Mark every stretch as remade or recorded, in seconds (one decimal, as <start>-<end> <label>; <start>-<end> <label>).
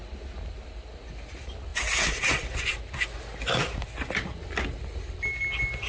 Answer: 0.0-5.9 recorded